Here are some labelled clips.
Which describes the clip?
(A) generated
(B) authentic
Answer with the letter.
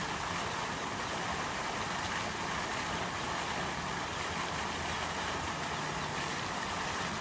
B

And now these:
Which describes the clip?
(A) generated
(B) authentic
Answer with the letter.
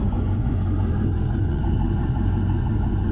A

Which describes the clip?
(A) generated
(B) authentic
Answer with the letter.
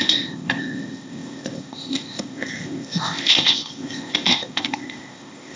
A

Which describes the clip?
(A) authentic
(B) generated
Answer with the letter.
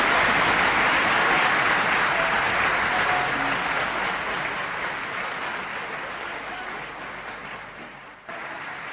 A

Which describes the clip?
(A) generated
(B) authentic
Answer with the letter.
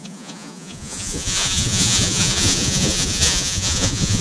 A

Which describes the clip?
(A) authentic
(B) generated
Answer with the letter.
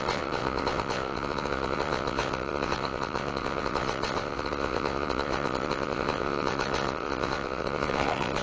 B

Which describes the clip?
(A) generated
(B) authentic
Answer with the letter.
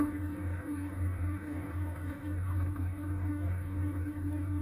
A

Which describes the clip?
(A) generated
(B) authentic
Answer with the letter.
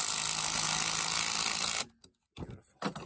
B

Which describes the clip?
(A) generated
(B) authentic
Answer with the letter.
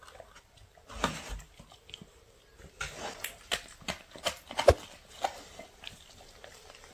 B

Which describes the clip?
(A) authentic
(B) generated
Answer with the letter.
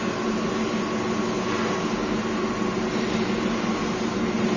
A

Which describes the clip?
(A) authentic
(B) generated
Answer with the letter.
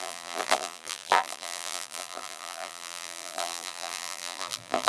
B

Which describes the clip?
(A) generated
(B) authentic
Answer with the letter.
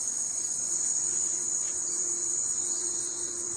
A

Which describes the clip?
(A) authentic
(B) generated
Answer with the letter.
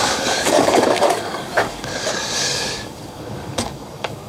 B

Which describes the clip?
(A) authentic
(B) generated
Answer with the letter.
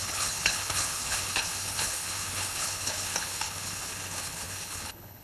B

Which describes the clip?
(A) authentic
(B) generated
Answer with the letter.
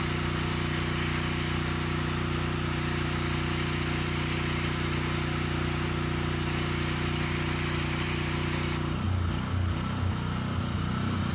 A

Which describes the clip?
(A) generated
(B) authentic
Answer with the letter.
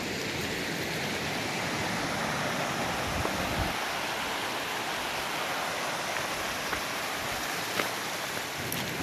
B